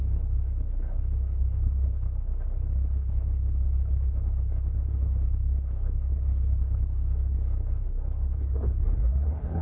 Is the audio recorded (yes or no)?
no